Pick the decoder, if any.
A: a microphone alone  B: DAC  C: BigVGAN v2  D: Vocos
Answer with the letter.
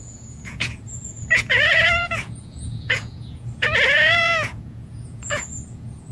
D